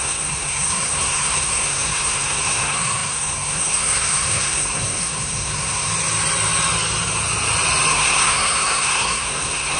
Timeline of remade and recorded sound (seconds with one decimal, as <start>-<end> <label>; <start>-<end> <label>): 0.0-5.9 remade; 5.9-7.9 recorded; 7.9-9.8 remade